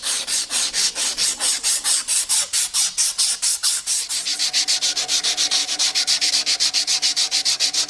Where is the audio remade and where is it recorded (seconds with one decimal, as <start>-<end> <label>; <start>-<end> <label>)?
0.0-5.6 recorded; 5.6-6.3 remade; 6.3-7.9 recorded